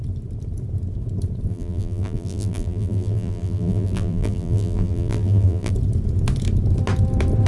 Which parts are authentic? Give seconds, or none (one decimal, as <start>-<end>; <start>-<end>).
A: 0.0-1.5; 5.7-7.5